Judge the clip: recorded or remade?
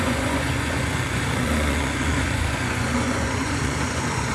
remade